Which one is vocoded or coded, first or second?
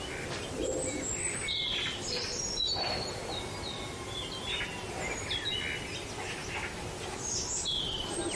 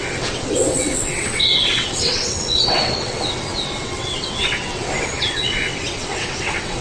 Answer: second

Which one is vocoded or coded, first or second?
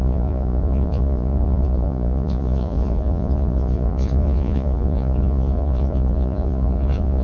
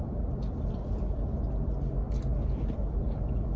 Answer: first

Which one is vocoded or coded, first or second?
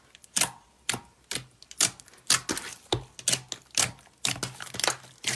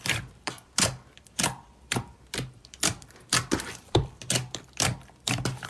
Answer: second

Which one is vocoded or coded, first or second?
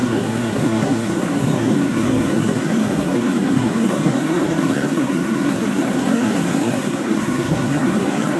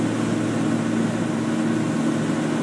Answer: first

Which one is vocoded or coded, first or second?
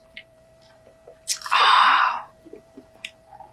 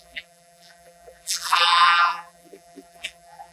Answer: second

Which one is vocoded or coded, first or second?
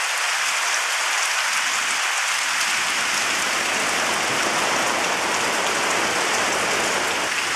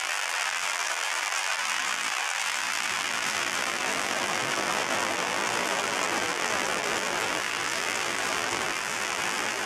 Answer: second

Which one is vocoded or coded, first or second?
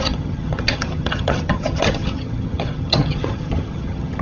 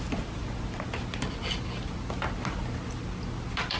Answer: first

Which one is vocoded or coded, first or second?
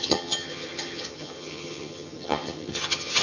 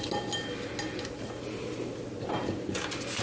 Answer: first